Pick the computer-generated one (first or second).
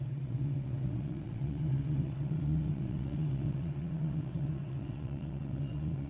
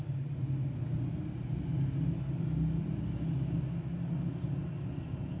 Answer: first